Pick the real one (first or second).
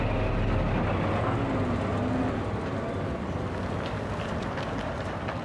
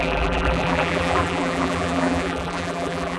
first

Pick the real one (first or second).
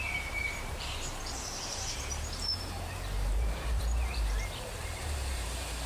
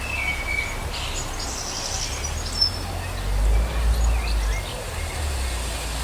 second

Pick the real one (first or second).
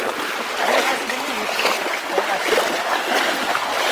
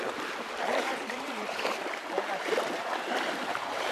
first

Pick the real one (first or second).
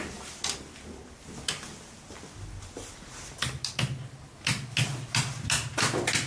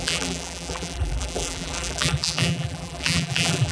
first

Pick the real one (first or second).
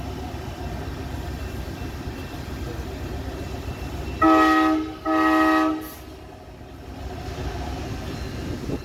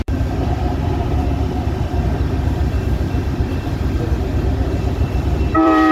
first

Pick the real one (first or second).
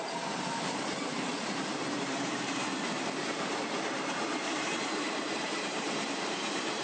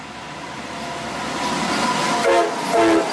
second